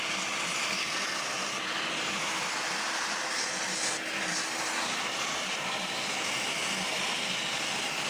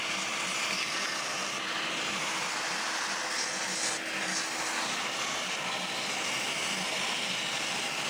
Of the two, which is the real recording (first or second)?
second